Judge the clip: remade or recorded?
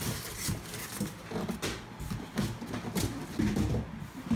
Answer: recorded